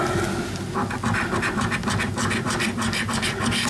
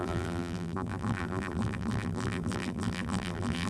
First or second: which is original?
first